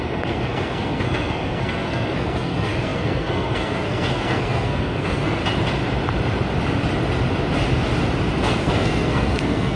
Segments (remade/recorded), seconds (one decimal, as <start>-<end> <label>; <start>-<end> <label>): 0.0-5.4 remade; 5.4-8.4 recorded; 8.4-9.8 remade